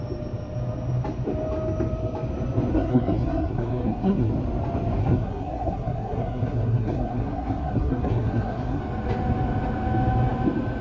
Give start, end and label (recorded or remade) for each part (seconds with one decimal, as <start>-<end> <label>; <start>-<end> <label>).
0.0-2.7 recorded; 2.7-4.3 remade; 4.3-5.0 recorded; 5.0-8.8 remade; 8.8-10.8 recorded